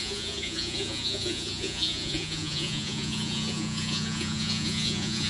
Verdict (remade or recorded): remade